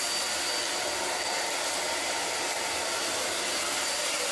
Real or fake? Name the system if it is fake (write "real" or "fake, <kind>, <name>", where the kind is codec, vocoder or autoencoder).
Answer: real